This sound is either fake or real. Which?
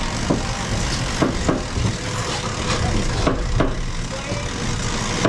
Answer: real